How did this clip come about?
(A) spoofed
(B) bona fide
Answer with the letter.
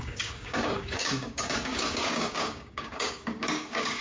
A